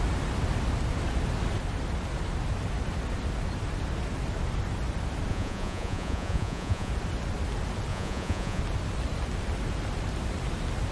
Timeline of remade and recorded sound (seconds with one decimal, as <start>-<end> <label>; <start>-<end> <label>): 0.0-5.3 recorded; 5.3-6.9 remade; 6.9-7.9 recorded; 7.9-8.6 remade; 8.6-10.9 recorded